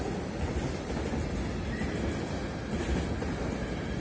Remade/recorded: recorded